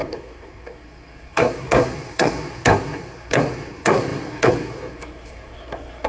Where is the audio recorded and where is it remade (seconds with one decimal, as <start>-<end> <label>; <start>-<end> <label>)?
0.0-6.1 remade